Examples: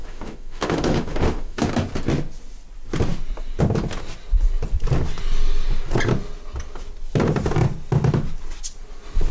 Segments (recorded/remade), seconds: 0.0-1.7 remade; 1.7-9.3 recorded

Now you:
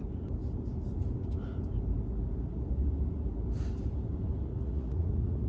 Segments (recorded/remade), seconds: 0.0-4.5 recorded; 4.5-5.5 remade

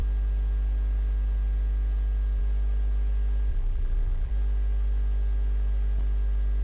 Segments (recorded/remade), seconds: 0.0-3.5 recorded; 3.5-4.3 remade; 4.3-6.6 recorded

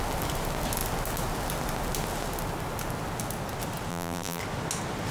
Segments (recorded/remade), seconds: 0.0-3.9 recorded; 3.9-4.4 remade; 4.4-5.1 recorded

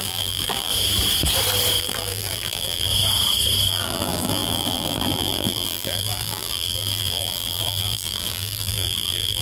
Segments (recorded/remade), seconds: 0.0-0.7 remade; 0.7-1.8 recorded; 1.8-2.9 remade; 2.9-3.7 recorded; 3.7-9.4 remade

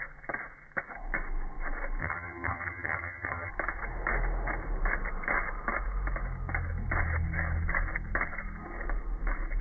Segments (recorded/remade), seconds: 0.0-2.0 recorded; 2.0-3.5 remade; 3.5-9.6 recorded

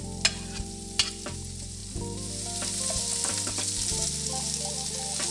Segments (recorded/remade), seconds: 0.0-5.3 recorded

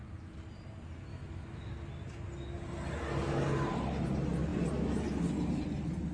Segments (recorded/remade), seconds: 0.0-1.1 recorded; 1.1-1.7 remade; 1.7-6.1 recorded